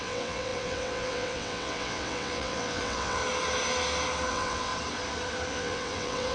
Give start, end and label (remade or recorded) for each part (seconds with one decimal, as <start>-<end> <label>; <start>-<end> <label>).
0.0-3.2 remade; 3.2-4.3 recorded; 4.3-4.7 remade; 4.7-5.5 recorded; 5.5-6.3 remade